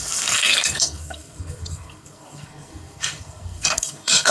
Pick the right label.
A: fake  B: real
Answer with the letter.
A